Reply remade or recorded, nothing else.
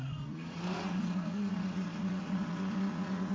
remade